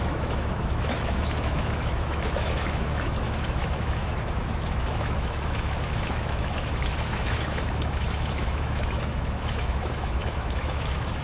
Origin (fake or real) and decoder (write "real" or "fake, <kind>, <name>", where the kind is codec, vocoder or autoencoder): fake, autoencoder, DAC-VAE